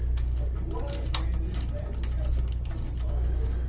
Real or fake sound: real